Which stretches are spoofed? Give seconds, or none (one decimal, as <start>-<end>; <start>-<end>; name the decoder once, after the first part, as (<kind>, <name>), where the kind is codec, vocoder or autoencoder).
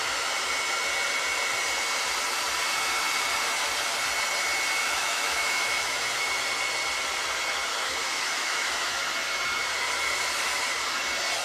4.8-6.3 (autoencoder, DAC-VAE); 7.7-9.0